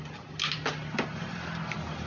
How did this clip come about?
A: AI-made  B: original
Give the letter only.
B